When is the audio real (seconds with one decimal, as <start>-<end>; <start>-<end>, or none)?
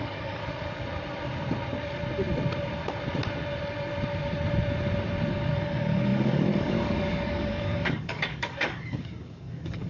0.4-5.3